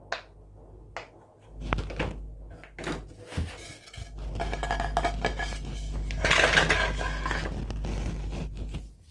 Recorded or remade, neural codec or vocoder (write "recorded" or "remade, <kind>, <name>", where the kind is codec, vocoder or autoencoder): recorded